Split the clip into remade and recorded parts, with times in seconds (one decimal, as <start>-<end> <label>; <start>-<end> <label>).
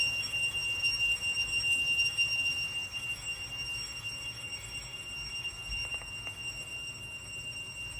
0.0-8.0 remade